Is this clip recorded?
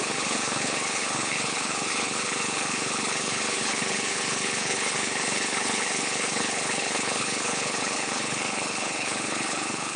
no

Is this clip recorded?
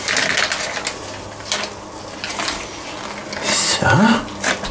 yes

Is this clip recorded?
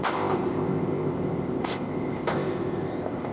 no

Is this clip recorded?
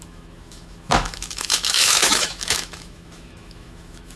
no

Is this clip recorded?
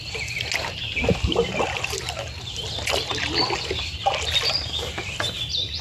yes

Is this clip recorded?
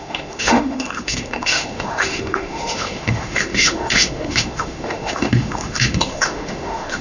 no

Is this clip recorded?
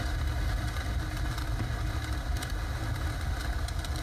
yes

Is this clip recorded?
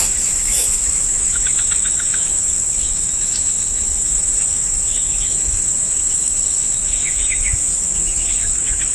no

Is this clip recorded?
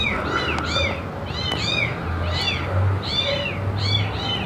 yes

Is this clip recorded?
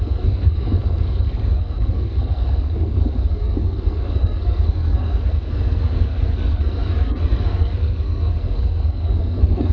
no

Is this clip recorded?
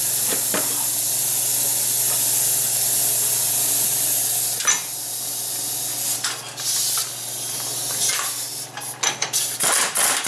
yes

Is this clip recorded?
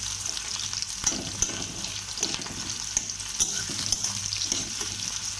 yes